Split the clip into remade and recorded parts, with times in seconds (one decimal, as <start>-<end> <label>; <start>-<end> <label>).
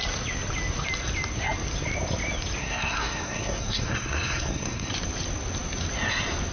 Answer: 0.0-2.6 recorded; 2.6-4.9 remade; 4.9-6.5 recorded